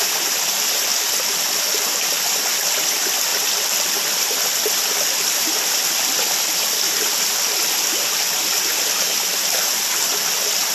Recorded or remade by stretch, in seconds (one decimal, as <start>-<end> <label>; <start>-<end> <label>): 0.0-10.7 recorded